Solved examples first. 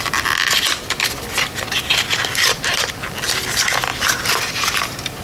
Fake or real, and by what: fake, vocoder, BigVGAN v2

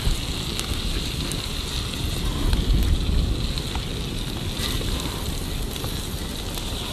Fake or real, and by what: real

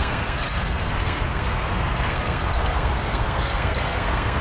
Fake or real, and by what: fake, codec, SNAC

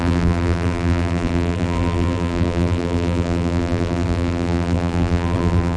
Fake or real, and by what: fake, vocoder, BigVGAN v2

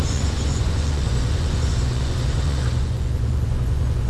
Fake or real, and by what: fake, vocoder, Vocos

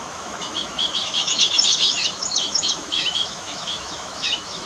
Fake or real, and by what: fake, autoencoder, DAC-VAE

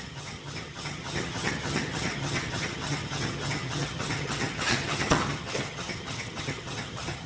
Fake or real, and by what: fake, vocoder, HiFi-GAN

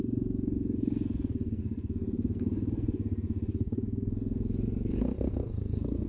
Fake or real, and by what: fake, codec, SNAC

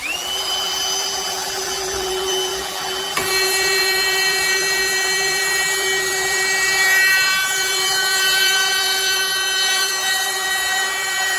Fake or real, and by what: fake, vocoder, BigVGAN v2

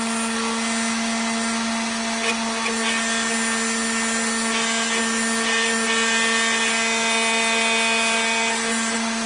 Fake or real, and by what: real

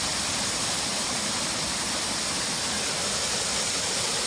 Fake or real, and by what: real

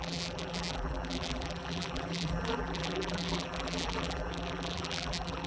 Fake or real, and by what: fake, vocoder, BigVGAN v2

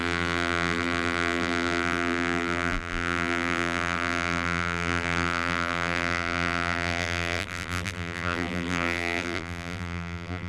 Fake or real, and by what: fake, vocoder, BigVGAN v2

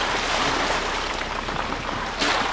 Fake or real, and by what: real